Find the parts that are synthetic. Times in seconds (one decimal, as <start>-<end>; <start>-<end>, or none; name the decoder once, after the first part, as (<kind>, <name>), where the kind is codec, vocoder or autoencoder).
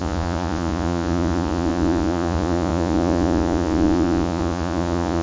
0.0-5.2 (vocoder, Vocos)